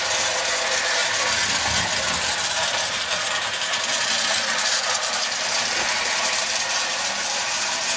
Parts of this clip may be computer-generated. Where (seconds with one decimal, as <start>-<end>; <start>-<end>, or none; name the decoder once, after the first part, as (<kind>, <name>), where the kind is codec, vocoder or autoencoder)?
none